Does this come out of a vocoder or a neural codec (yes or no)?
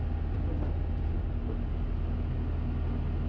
no